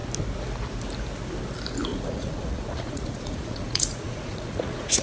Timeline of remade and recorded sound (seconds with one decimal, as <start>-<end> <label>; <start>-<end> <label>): 0.0-1.9 recorded; 1.9-5.0 remade